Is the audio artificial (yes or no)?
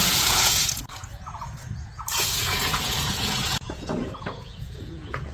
yes